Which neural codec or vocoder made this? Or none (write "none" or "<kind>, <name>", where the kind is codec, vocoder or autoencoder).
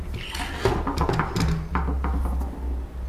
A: none